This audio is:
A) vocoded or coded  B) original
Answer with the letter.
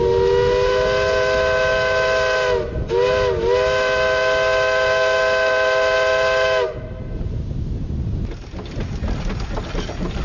B